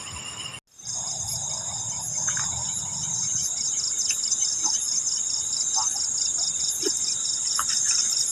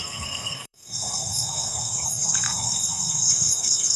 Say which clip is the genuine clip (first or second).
first